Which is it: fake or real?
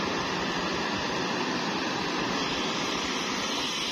fake